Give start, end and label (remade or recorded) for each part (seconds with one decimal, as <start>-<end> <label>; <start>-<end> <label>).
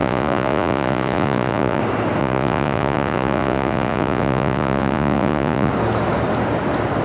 0.0-1.8 remade; 1.8-2.2 recorded; 2.2-5.7 remade; 5.7-7.0 recorded